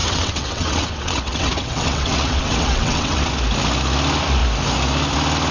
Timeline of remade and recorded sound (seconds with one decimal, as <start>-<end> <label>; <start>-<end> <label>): 0.0-3.3 remade; 3.3-5.5 recorded